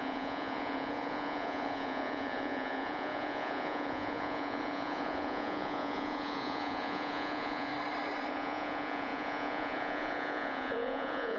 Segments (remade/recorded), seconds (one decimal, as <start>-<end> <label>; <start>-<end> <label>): 0.0-7.7 remade; 7.7-8.3 recorded; 8.3-11.4 remade